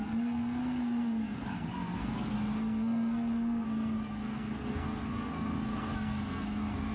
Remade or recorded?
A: remade